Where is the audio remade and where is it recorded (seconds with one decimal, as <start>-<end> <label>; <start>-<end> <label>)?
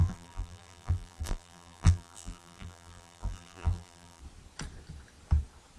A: 0.0-4.2 remade; 4.2-5.8 recorded